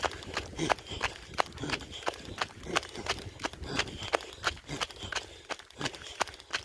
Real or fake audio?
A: real